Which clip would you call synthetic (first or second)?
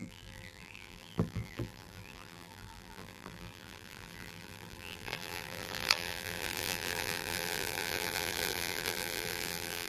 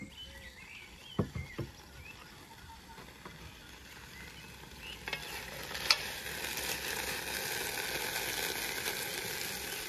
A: first